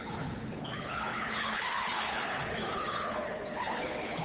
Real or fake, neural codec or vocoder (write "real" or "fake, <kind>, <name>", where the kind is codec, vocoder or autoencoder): fake, codec, HILCodec